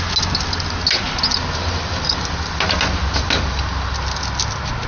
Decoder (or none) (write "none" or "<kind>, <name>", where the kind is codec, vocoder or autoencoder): none